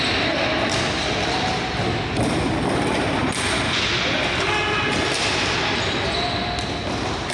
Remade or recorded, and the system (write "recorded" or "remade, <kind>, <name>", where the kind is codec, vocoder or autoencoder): recorded